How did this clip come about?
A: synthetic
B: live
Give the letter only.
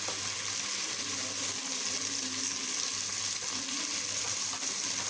B